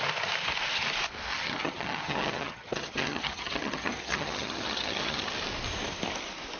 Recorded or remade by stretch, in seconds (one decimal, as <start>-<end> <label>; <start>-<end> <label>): 0.0-1.3 recorded; 1.3-5.3 remade; 5.3-6.6 recorded